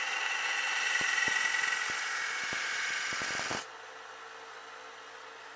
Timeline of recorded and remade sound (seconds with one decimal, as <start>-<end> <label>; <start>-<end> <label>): 0.0-5.6 recorded